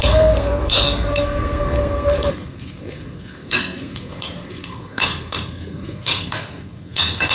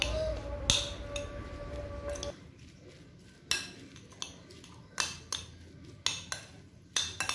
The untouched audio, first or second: second